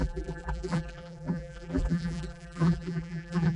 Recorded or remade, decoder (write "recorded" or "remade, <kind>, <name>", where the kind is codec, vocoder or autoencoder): remade, vocoder, BigVGAN v2